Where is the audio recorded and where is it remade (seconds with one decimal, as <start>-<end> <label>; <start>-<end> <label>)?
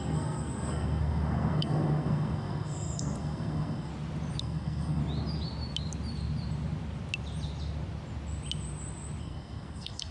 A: 0.0-3.9 remade; 3.9-4.4 recorded; 4.4-5.0 remade; 5.0-9.2 recorded; 9.2-10.1 remade